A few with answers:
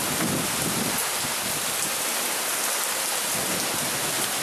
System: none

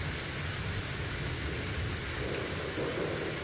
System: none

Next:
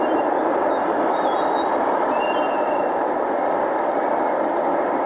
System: none